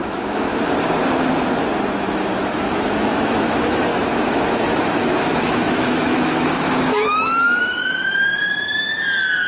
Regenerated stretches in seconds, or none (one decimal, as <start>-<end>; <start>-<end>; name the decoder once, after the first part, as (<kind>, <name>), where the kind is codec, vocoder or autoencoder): 0.0-0.5 (autoencoder, DAC-VAE); 2.1-9.5